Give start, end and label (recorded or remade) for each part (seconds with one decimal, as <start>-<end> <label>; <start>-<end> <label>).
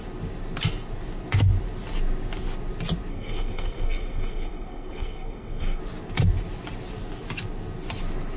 0.0-3.1 recorded; 3.1-5.8 remade; 5.8-8.4 recorded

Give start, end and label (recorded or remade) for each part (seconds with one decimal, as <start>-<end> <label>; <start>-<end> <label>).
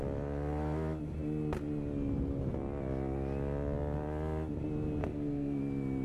0.0-5.0 recorded; 5.0-5.6 remade; 5.6-6.0 recorded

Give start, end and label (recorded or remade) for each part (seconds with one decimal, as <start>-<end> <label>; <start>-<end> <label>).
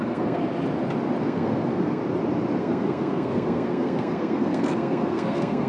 0.0-0.4 remade; 0.4-1.2 recorded; 1.2-2.0 remade; 2.0-2.6 recorded; 2.6-5.7 remade